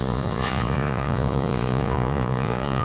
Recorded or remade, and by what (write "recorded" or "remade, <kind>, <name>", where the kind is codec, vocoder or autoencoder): remade, vocoder, Vocos